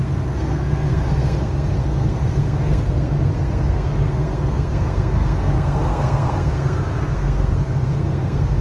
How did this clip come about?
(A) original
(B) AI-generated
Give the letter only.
B